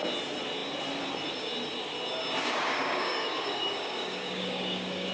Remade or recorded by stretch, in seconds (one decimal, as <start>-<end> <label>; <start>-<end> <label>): 0.0-2.4 recorded; 2.4-5.1 remade